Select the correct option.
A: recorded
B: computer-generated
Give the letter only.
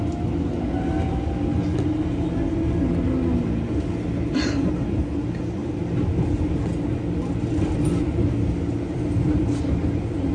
A